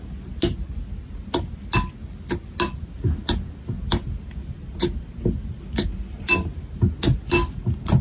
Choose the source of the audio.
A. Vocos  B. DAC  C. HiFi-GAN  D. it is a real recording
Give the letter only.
D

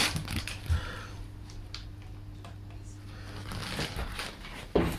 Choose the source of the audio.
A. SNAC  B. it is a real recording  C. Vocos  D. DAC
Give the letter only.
B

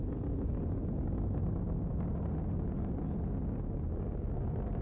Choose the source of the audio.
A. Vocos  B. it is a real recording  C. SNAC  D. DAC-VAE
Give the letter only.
B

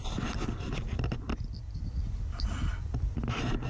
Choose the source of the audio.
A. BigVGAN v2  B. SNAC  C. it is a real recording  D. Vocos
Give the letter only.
C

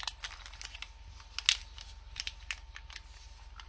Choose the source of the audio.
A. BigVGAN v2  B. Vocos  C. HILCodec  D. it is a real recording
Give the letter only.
D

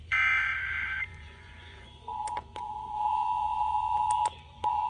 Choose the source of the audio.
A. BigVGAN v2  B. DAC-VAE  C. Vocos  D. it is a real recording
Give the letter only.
C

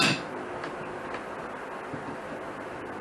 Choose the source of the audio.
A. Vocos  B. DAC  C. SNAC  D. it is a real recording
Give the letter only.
D